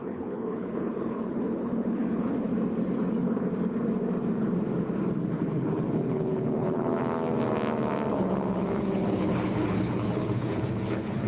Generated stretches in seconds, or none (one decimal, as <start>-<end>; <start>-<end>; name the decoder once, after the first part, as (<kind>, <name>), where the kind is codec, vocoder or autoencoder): 0.0-2.5 (codec, HILCodec); 3.1-3.5; 5.3-7.0; 8.1-11.3